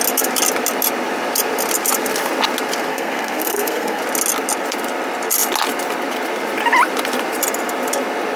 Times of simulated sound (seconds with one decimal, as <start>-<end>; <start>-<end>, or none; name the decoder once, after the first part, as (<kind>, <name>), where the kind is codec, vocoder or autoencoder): 2.9-4.0 (codec, SNAC)